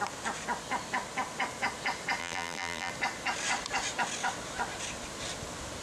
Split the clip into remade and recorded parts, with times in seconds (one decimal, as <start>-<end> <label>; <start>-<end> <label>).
0.0-2.2 recorded; 2.2-2.9 remade; 2.9-5.8 recorded